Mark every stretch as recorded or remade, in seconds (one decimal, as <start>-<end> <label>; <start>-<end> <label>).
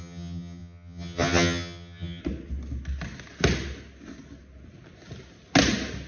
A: 0.0-2.2 remade; 2.2-6.1 recorded